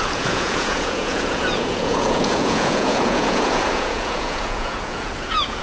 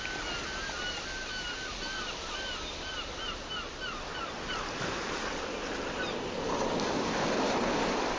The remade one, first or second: first